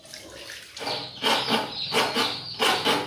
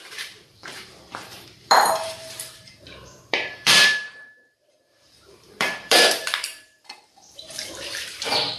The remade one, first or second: second